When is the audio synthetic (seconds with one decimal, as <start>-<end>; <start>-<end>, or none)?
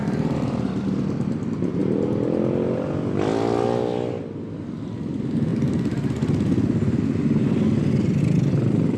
0.0-1.8; 4.6-5.5; 8.2-9.0